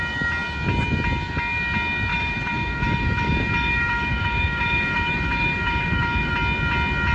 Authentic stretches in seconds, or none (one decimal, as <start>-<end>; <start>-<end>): 0.0-2.1; 6.3-7.1